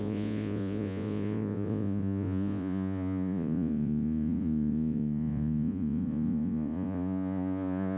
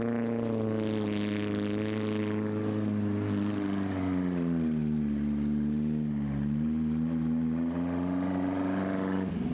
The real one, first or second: second